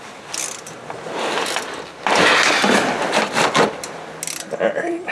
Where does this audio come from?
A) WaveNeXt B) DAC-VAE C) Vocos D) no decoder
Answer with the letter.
D